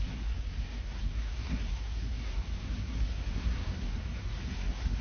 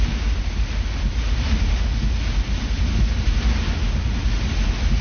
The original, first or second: second